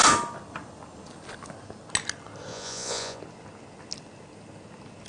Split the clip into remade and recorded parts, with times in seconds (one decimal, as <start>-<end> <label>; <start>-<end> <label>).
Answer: 0.0-2.5 recorded; 2.5-3.2 remade; 3.2-5.1 recorded